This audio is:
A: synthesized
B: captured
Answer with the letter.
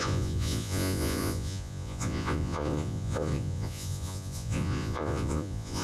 A